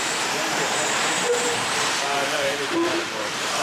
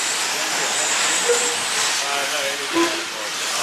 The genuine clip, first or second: second